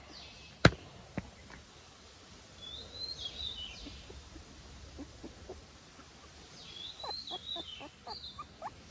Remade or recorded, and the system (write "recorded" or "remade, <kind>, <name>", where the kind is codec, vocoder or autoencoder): recorded